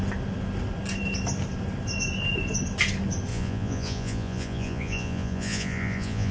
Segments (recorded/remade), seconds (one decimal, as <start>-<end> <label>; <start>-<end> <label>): 0.0-3.3 recorded; 3.3-6.3 remade